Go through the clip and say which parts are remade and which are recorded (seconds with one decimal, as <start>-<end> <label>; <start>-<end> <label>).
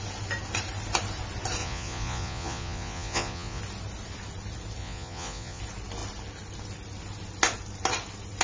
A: 0.0-1.6 recorded; 1.6-3.6 remade; 3.6-4.8 recorded; 4.8-5.6 remade; 5.6-8.4 recorded